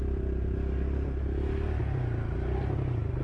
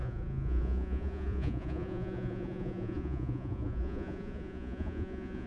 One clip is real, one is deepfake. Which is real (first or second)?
first